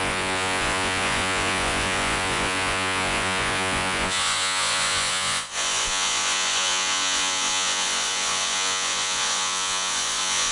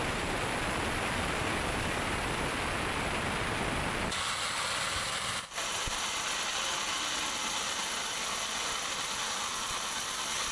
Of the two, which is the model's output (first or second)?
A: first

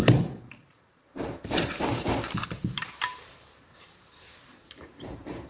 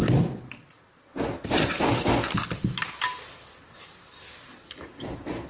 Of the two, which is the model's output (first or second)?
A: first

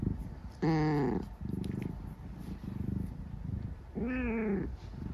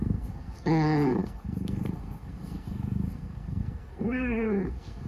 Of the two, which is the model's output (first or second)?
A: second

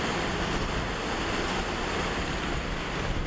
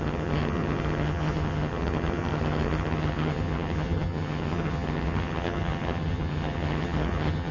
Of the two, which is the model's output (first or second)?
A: second